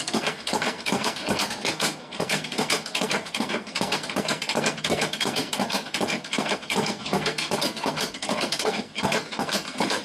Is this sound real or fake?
fake